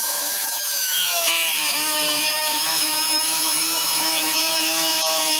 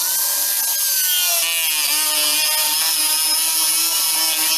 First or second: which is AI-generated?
first